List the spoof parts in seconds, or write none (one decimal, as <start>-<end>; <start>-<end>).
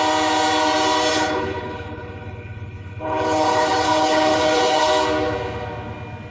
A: 1.1-4.9